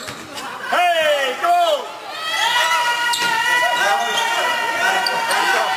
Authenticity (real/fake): real